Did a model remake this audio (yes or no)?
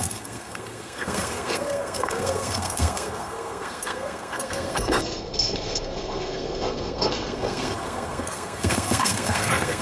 yes